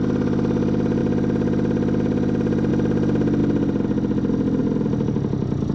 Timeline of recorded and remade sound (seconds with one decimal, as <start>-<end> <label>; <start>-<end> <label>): 0.0-5.7 recorded